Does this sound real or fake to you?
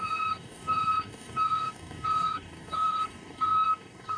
fake